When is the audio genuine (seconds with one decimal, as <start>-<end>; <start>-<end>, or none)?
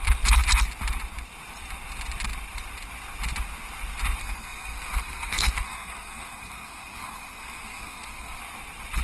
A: 0.0-4.2; 8.4-9.0